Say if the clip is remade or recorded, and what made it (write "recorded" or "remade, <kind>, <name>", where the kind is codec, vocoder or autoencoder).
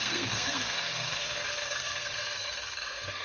remade, codec, SNAC